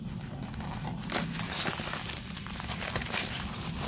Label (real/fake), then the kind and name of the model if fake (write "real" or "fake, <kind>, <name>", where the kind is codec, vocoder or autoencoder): real